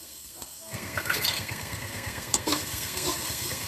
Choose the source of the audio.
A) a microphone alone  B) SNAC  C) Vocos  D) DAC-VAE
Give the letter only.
B